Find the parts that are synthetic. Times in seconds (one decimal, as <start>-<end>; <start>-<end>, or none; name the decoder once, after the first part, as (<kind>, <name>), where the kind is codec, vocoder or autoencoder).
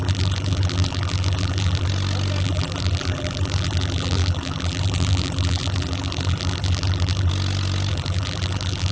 0.0-1.9 (vocoder, BigVGAN v2); 2.4-7.3; 7.9-8.9